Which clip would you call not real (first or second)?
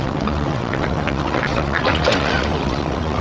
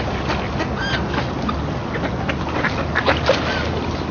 first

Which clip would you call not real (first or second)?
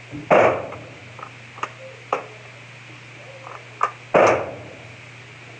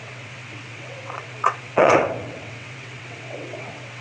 second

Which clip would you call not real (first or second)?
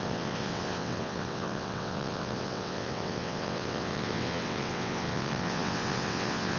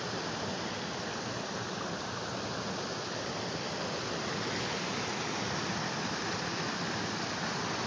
first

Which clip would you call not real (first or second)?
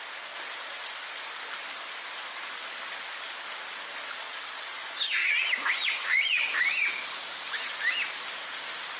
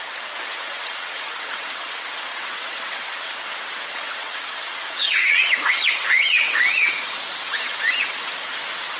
second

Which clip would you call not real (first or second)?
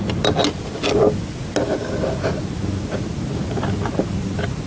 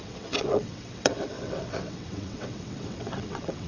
second